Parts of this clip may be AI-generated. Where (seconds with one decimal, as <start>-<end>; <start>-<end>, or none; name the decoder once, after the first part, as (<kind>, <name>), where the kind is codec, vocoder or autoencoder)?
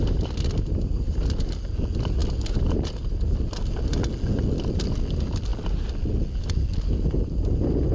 none